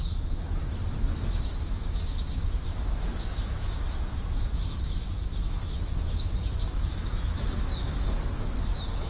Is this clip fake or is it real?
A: fake